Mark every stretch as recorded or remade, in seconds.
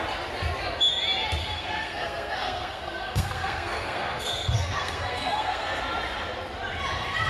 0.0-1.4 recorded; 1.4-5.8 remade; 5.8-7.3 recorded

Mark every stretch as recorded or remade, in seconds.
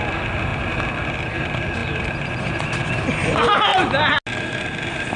0.0-5.2 recorded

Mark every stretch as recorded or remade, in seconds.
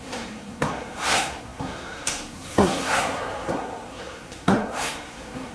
0.0-5.5 remade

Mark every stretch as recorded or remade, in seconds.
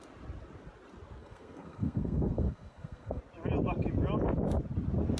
0.0-1.2 recorded; 1.2-3.2 remade; 3.2-5.2 recorded